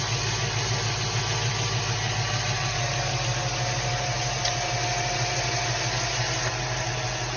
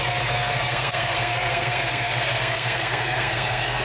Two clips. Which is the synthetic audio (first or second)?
second